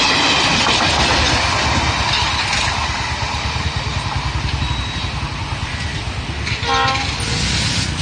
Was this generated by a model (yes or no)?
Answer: no